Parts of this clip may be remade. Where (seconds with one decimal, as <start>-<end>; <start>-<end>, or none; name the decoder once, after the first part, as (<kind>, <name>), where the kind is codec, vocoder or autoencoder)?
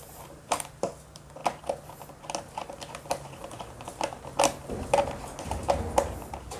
0.0-1.4 (vocoder, BigVGAN v2); 5.4-6.6